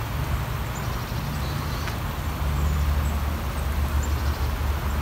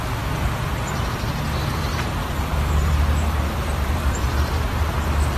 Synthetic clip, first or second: second